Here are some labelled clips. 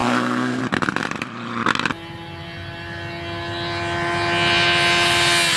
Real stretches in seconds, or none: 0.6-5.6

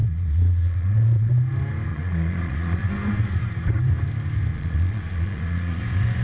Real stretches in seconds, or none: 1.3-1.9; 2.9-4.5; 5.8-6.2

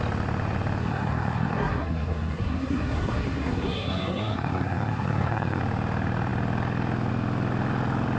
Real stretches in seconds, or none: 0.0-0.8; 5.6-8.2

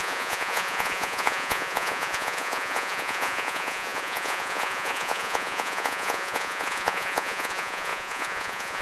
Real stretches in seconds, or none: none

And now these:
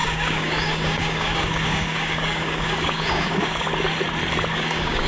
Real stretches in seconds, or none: 3.7-4.5

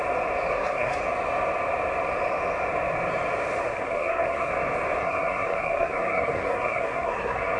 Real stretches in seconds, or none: 0.0-0.5; 1.0-3.6; 4.5-5.0

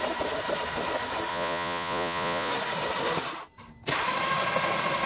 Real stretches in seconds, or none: 0.0-1.3; 2.5-5.1

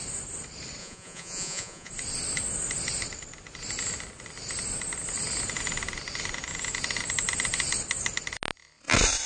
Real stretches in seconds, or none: 0.0-0.8; 1.9-9.3